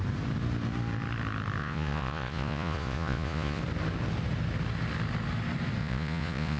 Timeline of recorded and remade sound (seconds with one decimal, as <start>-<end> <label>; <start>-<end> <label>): 0.0-1.6 recorded; 1.6-3.6 remade; 3.6-5.8 recorded; 5.8-6.6 remade